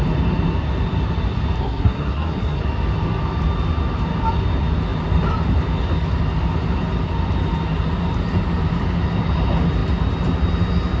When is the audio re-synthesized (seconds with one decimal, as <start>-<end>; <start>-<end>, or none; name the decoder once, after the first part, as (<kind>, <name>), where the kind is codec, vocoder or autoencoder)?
1.6-2.6 (codec, SNAC)